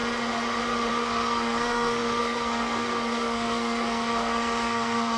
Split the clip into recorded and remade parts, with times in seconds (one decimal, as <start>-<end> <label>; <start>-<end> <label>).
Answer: 0.0-0.9 recorded; 0.9-5.2 remade